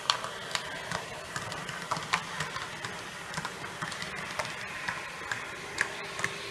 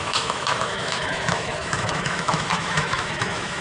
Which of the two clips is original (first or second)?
first